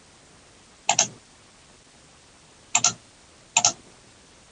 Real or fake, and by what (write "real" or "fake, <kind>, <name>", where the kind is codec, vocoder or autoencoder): real